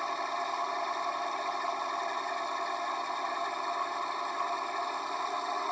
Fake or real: real